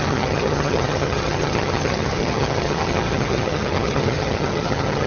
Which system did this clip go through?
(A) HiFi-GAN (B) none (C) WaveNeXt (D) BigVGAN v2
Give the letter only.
A